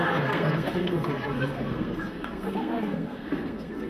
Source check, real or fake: fake